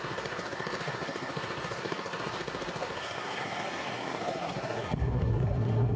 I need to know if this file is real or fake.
fake